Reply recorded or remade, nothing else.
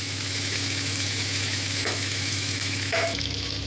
remade